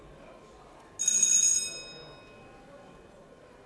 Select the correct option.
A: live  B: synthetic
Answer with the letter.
A